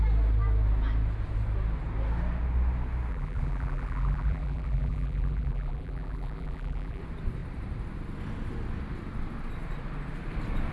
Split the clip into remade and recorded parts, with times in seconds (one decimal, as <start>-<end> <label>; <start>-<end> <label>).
0.0-3.1 recorded; 3.1-7.0 remade; 7.0-10.7 recorded